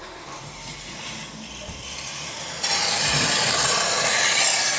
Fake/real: fake